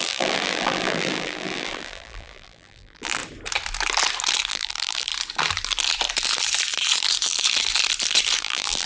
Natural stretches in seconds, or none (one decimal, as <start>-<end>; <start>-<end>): 3.2-4.5; 5.1-8.4